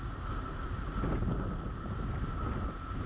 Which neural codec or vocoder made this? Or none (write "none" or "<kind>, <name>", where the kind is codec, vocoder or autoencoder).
none